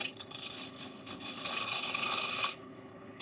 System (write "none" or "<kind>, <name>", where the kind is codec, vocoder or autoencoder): codec, HILCodec